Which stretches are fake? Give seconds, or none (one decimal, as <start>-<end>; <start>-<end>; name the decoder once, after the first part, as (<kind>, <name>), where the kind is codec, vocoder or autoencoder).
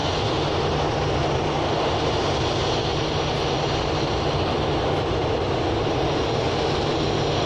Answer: none